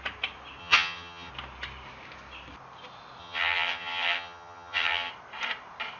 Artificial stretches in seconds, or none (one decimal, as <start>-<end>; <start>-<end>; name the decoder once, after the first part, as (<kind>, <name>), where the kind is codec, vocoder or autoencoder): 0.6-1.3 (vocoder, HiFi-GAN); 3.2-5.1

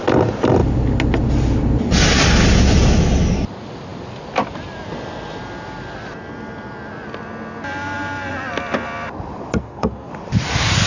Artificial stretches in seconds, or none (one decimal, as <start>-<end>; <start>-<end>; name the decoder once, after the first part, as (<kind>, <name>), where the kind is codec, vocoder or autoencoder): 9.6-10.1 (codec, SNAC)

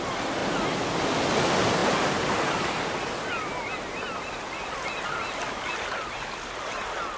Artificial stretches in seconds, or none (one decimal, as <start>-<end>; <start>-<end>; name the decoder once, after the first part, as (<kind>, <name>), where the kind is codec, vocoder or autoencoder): none